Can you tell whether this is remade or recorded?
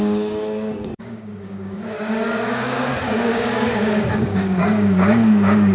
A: remade